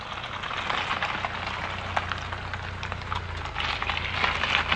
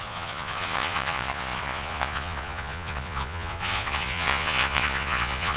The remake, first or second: second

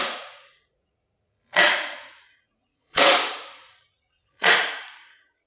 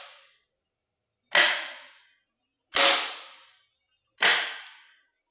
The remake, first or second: first